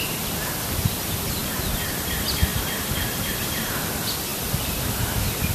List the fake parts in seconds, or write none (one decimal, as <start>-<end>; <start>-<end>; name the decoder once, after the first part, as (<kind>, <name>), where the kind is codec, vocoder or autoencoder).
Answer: none